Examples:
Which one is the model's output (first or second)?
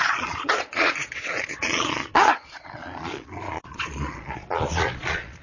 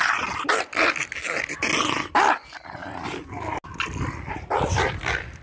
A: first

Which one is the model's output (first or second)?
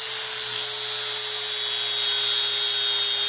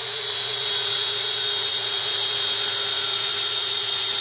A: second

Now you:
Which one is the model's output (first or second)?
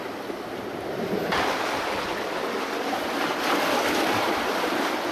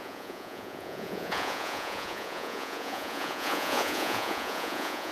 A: second